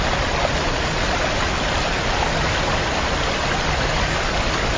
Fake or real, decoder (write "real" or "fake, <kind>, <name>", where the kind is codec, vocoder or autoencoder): real